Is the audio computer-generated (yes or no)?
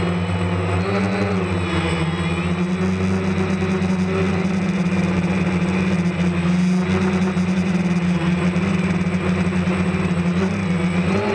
no